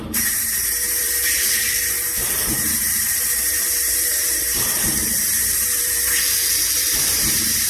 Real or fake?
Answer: fake